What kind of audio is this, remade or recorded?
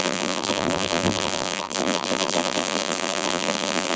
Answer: remade